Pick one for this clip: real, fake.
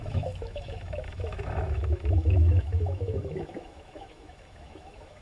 fake